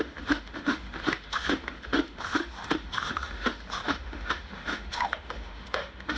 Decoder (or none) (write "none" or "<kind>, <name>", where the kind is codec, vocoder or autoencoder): autoencoder, DAC-VAE